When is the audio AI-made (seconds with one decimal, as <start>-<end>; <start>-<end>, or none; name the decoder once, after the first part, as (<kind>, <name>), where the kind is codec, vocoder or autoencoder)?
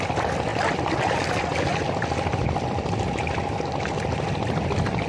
none